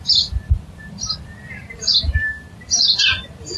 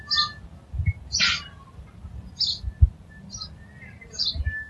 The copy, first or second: first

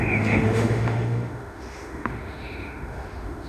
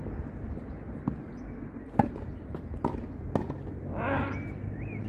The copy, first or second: first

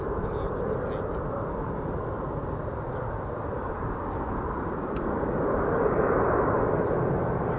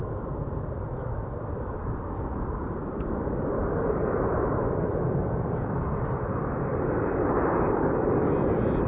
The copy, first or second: second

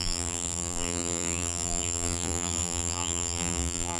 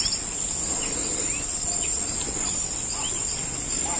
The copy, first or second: first